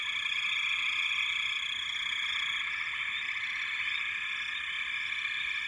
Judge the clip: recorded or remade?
recorded